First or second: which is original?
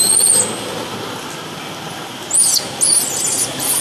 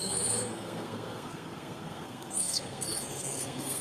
first